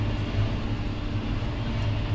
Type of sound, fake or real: real